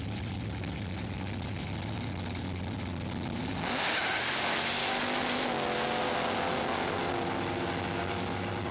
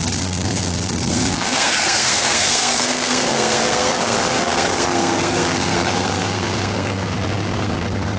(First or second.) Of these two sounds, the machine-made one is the second